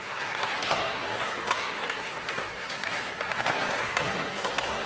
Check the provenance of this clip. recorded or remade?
remade